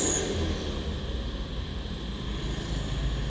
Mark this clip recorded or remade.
recorded